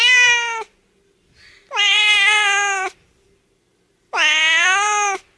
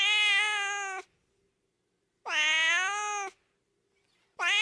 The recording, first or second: second